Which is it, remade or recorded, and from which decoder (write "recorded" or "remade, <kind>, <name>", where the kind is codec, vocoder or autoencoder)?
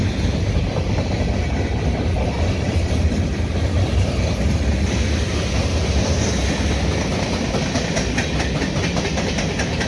recorded